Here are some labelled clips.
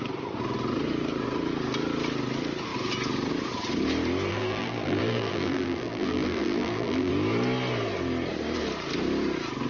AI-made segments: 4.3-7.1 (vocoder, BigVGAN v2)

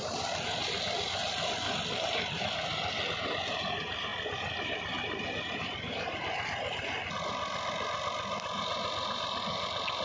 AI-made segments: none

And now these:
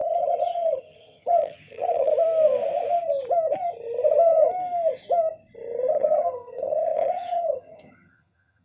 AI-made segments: 0.0-2.1 (vocoder, HiFi-GAN); 5.9-8.6

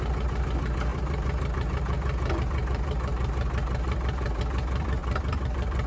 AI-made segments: 0.9-4.4 (vocoder, BigVGAN v2); 5.0-5.9

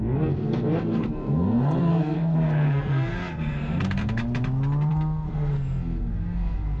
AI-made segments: 0.0-4.2 (codec, SNAC); 4.9-6.8

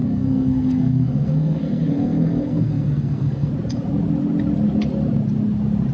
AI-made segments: 0.0-3.5 (codec, SNAC)

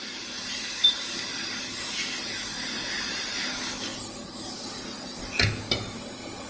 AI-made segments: none